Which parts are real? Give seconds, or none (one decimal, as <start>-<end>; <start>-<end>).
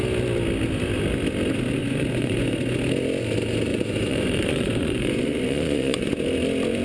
0.0-1.8; 2.7-3.7; 6.1-6.8